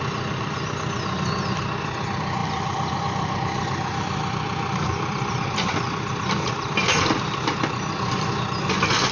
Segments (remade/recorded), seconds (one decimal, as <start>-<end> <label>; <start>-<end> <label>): 0.0-2.4 recorded; 2.4-7.0 remade; 7.0-9.1 recorded